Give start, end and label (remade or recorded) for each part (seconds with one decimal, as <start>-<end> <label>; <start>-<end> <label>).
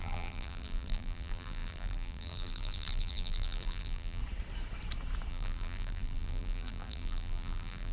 0.0-4.2 remade; 4.2-5.3 recorded; 5.3-7.9 remade